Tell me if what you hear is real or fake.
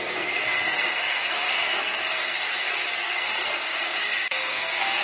fake